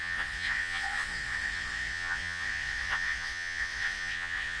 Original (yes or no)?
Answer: no